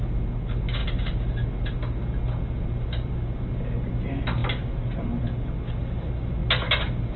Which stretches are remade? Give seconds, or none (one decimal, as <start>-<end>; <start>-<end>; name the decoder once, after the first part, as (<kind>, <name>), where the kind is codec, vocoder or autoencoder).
none